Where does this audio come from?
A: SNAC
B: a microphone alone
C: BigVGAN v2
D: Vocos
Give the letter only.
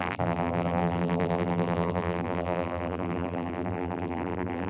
C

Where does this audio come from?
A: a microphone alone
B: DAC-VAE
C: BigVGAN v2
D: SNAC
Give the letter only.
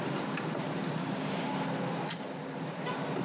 A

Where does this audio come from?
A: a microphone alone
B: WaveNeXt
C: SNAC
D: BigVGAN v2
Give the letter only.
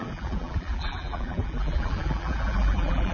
D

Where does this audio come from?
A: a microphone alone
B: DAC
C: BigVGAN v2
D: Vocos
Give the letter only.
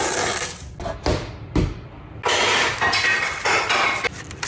A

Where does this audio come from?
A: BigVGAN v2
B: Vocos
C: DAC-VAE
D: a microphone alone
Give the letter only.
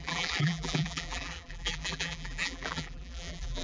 A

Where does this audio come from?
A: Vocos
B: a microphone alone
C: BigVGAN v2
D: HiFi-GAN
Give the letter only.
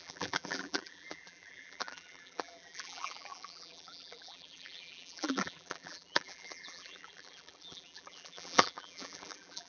C